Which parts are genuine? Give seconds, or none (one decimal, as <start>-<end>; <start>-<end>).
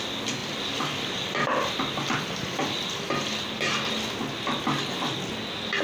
0.0-0.4; 3.9-5.8